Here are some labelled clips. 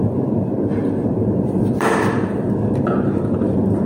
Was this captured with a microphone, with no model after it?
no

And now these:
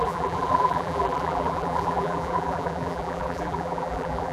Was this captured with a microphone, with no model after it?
no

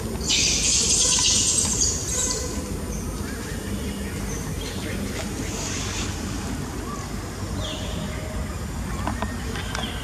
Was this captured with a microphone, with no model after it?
yes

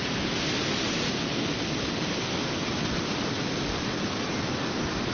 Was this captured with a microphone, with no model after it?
yes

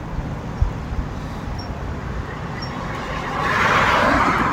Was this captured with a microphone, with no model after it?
no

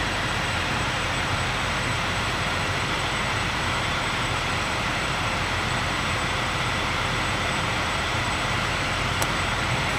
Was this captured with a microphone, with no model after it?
no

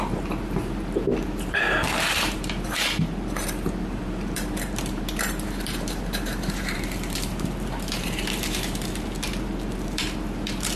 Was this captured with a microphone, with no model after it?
no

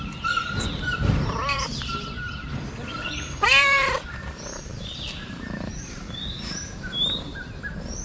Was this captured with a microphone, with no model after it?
no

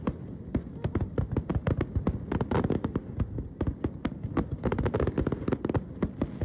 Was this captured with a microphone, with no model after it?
yes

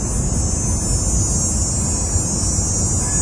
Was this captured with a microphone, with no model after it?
yes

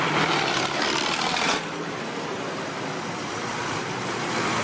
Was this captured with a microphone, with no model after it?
no